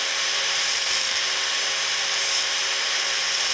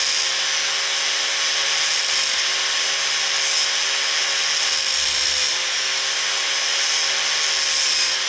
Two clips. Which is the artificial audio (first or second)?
first